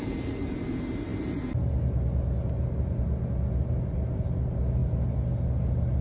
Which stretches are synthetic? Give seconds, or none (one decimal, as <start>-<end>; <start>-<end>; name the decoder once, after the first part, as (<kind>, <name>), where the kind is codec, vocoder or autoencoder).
none